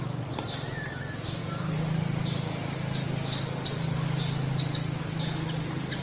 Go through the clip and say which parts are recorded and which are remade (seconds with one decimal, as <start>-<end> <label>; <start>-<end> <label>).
0.0-6.0 recorded